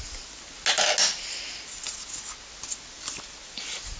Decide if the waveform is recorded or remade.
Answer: recorded